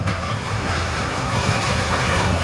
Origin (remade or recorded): remade